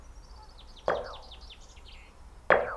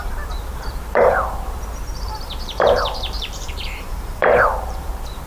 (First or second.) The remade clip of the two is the second